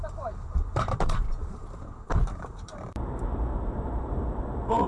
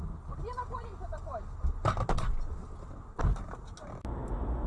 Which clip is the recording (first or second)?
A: second